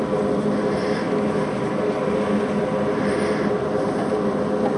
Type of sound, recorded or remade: recorded